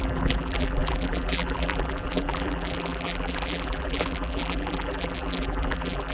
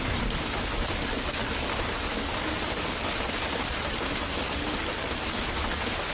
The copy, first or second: first